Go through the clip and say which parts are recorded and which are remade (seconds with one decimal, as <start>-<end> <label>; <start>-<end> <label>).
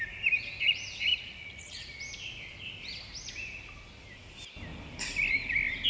0.0-1.1 recorded; 1.1-2.0 remade; 2.0-5.9 recorded